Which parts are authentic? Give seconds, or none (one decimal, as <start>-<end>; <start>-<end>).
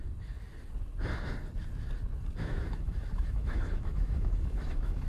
0.0-2.4